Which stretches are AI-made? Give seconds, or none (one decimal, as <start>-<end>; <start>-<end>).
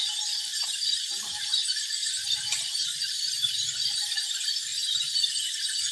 0.0-4.7